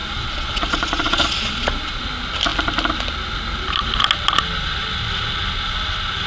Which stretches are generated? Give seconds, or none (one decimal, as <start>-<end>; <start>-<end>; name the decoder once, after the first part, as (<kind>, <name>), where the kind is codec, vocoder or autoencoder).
0.0-2.0 (vocoder, Vocos)